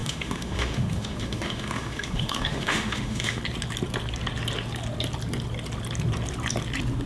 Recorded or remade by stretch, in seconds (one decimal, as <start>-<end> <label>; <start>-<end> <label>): 0.0-3.4 remade; 3.4-7.1 recorded